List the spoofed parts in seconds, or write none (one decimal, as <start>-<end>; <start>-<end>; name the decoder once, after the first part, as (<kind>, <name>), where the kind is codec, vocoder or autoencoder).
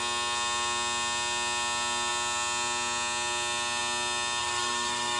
4.4-5.2 (codec, SNAC)